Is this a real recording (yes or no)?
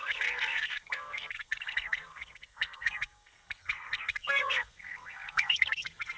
no